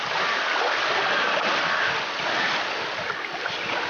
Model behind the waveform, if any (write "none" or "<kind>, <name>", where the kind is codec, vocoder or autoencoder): none